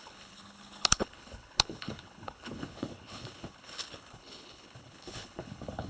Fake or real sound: fake